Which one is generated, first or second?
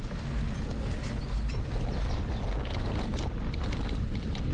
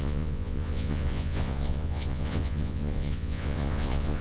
second